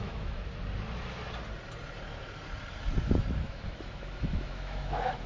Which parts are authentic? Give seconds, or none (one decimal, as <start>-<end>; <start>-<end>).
0.5-3.4